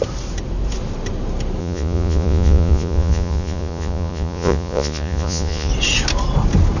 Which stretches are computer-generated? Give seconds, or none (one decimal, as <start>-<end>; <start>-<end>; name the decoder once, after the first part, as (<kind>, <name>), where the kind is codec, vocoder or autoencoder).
1.6-5.7 (vocoder, Vocos)